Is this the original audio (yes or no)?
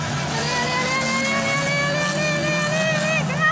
yes